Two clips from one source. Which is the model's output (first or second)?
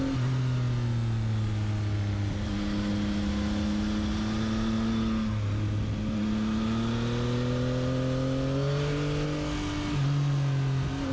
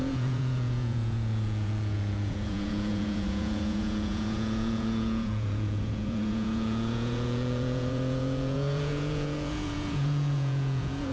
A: second